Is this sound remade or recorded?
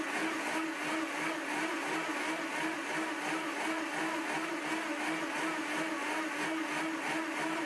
recorded